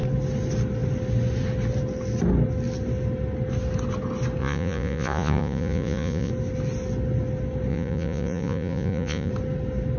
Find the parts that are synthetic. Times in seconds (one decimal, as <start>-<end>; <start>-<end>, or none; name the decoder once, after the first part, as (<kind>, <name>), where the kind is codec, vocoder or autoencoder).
4.4-6.3 (vocoder, Vocos); 7.7-9.3